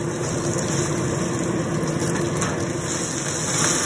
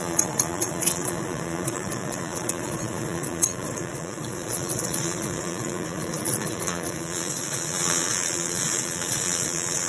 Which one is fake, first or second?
second